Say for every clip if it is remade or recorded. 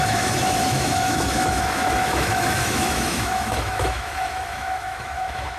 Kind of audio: remade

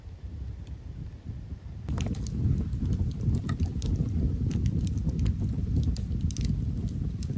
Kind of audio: recorded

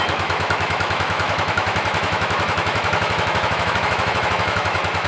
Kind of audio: remade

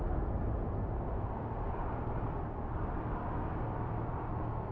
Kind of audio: recorded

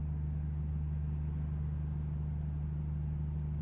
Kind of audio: recorded